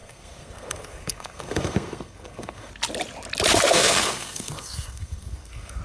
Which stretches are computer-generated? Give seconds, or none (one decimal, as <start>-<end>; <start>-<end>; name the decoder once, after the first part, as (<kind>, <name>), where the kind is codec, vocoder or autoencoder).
0.0-2.7 (codec, SNAC); 3.7-5.8